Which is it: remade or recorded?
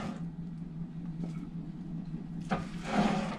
recorded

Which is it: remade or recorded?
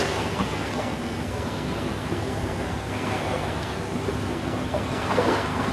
remade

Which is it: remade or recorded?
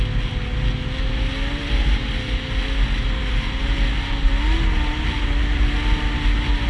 recorded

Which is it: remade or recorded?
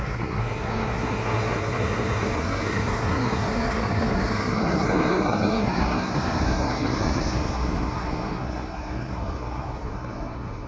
remade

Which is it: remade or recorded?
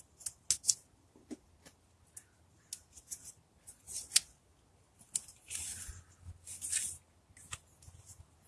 recorded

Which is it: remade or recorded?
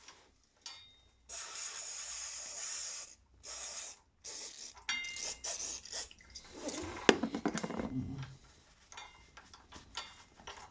recorded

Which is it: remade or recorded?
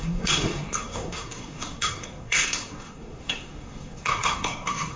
remade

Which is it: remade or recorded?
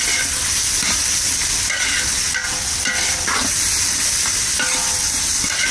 recorded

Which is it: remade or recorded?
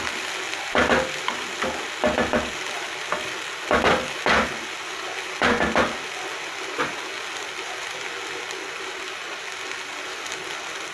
recorded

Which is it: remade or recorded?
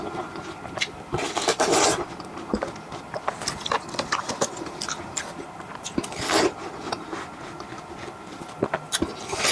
recorded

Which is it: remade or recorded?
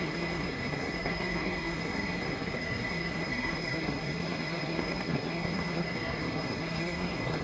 remade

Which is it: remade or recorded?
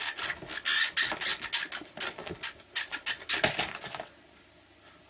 recorded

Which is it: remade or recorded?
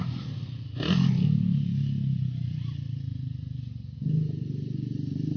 recorded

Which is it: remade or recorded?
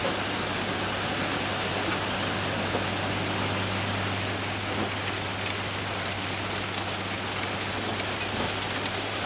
recorded